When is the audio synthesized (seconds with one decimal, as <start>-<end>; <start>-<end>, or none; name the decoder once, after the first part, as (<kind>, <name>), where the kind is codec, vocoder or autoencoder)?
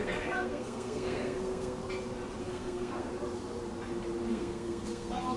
0.0-1.8 (codec, SNAC); 2.4-3.1; 4.3-5.4